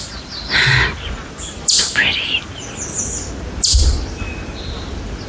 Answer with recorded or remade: recorded